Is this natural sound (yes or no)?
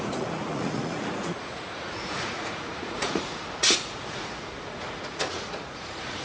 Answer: no